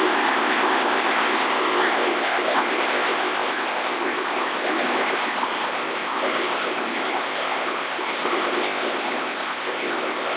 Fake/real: fake